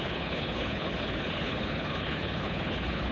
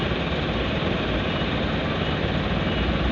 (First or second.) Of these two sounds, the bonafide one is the second